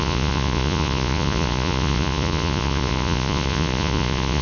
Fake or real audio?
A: fake